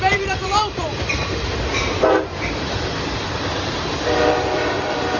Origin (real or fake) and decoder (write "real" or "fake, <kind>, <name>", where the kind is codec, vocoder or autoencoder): fake, vocoder, BigVGAN v2